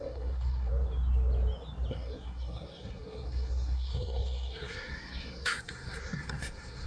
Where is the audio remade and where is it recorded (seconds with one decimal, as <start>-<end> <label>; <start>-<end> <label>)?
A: 0.0-0.7 remade; 0.7-1.9 recorded; 1.9-6.9 remade